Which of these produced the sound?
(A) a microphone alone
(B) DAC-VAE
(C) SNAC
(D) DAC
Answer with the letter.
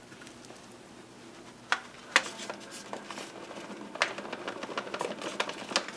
A